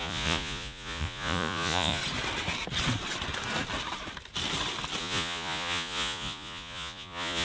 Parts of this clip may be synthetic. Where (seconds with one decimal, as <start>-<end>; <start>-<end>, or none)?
0.0-2.0; 5.0-7.4

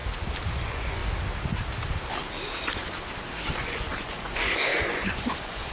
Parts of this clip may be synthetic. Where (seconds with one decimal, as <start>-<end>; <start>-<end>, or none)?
0.5-1.0; 3.5-5.7

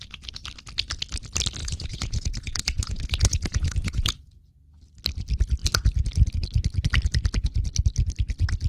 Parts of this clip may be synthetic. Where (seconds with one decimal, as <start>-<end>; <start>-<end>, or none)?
1.6-4.5

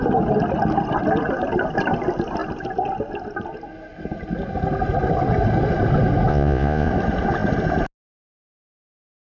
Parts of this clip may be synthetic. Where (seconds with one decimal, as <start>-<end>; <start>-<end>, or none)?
6.3-6.9

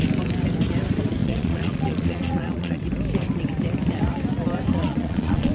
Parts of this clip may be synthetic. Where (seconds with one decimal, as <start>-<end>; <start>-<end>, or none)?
1.2-2.8; 4.7-5.5

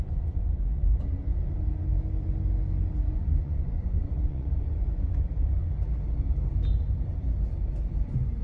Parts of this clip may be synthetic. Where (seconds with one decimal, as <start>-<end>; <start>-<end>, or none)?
0.0-0.9; 3.1-5.6

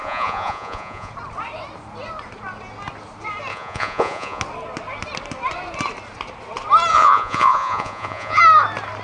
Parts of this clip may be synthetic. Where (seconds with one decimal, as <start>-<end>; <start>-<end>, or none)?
0.0-1.1; 3.5-4.4; 6.9-8.4